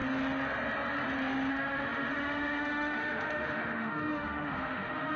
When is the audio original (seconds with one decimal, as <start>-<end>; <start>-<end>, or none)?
0.0-1.5